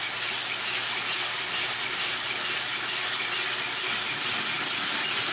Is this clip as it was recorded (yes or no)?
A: yes